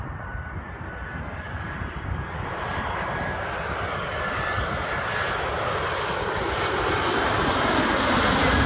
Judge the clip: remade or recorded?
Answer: recorded